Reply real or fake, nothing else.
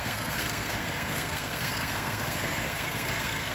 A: fake